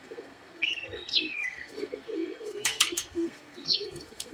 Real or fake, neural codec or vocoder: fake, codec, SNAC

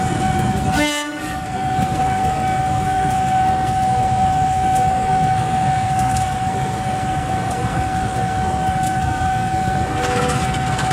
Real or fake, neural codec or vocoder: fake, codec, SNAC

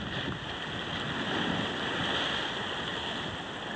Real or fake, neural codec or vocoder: real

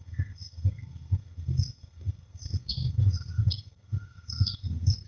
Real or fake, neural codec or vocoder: fake, codec, SNAC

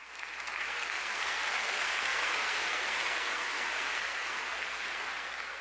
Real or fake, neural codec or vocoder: fake, codec, SNAC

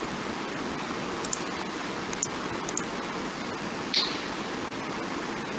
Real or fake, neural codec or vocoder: real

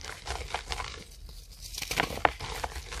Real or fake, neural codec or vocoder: real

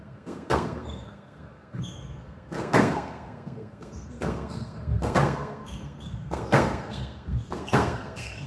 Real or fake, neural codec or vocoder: fake, codec, SNAC